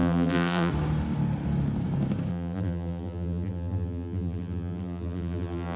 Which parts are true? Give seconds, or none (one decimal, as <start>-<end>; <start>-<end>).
0.7-2.3